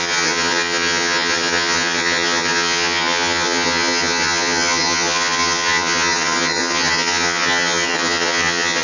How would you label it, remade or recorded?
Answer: remade